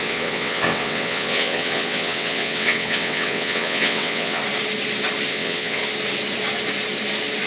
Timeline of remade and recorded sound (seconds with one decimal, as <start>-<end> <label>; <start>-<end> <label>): 0.0-4.4 remade; 4.4-5.3 recorded; 5.3-5.8 remade; 5.8-7.5 recorded